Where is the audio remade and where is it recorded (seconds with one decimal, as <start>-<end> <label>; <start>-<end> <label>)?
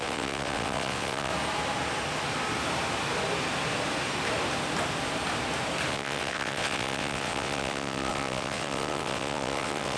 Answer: 0.0-1.3 remade; 1.3-5.9 recorded; 5.9-10.0 remade